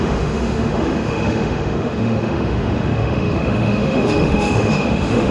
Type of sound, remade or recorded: remade